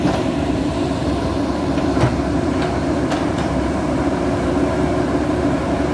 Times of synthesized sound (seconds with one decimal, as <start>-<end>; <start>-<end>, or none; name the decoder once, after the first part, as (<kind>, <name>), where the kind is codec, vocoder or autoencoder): 0.0-5.9 (vocoder, BigVGAN v2)